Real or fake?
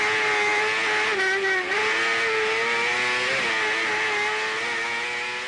real